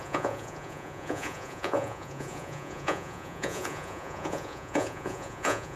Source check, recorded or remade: remade